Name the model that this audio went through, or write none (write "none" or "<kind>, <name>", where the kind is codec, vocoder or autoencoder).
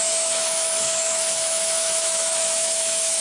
autoencoder, DAC-VAE